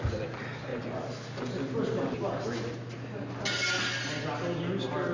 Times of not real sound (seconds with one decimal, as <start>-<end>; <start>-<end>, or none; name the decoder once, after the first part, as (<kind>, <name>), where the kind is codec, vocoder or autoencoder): none